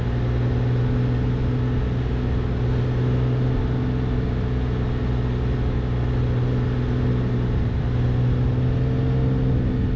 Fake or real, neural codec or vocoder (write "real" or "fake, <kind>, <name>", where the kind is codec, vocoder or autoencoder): real